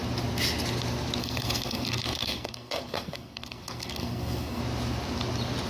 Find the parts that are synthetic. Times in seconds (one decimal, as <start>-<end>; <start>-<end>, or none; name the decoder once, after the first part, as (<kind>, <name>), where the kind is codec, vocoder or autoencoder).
1.2-4.6 (codec, SNAC)